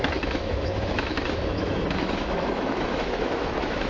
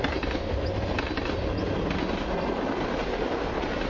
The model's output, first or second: first